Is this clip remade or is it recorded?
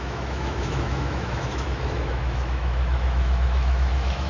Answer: remade